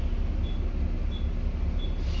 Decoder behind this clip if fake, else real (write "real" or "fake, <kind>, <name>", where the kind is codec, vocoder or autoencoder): real